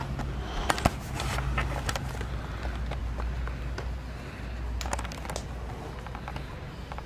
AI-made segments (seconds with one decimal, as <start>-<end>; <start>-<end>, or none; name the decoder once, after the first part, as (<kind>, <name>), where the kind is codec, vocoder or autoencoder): none